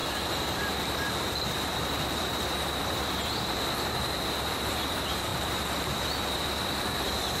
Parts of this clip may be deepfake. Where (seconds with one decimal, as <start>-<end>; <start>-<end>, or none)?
0.0-7.4